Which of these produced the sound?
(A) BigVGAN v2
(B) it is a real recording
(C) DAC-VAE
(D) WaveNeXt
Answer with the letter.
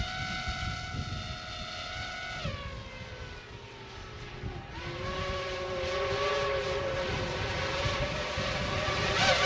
B